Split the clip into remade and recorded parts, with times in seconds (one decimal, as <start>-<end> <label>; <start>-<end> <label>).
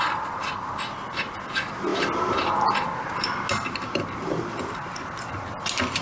0.0-6.0 recorded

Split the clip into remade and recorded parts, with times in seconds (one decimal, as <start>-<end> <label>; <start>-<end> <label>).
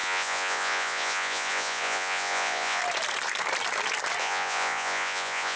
0.0-2.8 remade; 2.8-4.2 recorded; 4.2-5.6 remade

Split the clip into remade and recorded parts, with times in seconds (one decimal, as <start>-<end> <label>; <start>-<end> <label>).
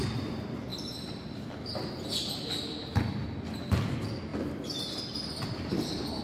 0.0-6.2 recorded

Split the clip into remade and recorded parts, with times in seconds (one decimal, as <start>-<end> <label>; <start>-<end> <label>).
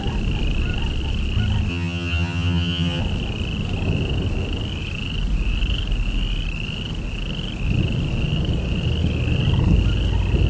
0.0-1.7 recorded; 1.7-3.0 remade; 3.0-10.5 recorded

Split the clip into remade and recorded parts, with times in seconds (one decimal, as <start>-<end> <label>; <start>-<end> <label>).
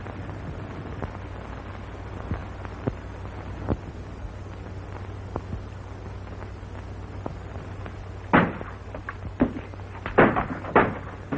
0.0-11.4 recorded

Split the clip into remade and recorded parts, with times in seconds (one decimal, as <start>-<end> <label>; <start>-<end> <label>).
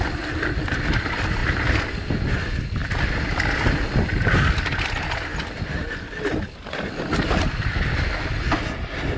0.0-9.2 recorded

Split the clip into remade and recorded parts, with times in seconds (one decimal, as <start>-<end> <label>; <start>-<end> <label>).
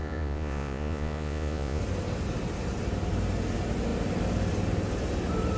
0.0-1.8 remade; 1.8-5.6 recorded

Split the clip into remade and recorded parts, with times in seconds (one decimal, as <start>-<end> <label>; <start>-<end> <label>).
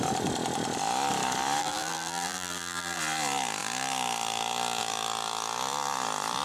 0.0-1.6 recorded; 1.6-3.0 remade; 3.0-6.4 recorded